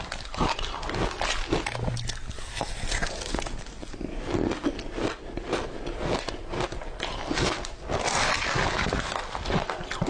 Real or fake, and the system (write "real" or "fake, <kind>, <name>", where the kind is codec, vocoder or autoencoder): real